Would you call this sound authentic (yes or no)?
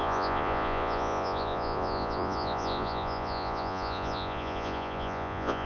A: no